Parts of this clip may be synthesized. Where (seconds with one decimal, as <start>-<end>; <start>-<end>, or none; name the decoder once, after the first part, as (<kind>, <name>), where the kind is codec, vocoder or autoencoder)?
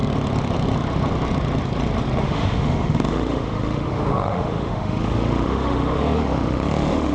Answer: 2.2-7.1 (autoencoder, DAC-VAE)